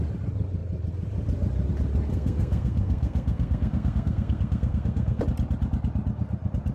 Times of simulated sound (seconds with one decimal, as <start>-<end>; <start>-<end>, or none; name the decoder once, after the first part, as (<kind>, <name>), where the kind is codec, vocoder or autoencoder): 2.1-5.2 (codec, SNAC)